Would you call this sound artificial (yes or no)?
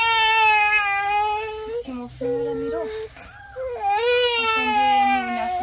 no